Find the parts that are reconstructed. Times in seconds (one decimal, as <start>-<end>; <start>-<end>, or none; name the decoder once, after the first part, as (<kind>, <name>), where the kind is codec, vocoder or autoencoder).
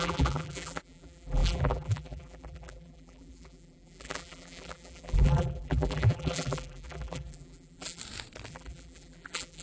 0.0-8.0 (vocoder, BigVGAN v2); 8.5-9.6